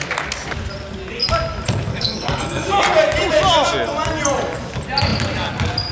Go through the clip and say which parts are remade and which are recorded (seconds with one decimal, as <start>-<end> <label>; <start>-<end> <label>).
0.0-1.9 recorded; 1.9-2.8 remade; 2.8-5.9 recorded